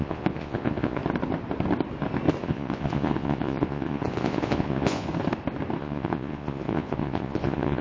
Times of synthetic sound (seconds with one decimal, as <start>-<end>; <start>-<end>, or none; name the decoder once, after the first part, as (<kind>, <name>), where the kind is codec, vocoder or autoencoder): 0.0-1.0 (vocoder, Vocos); 2.4-5.1; 5.8-7.8